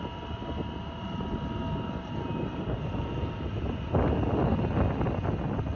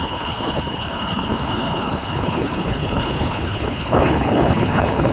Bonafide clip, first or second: first